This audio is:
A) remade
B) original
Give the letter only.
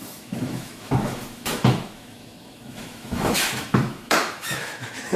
A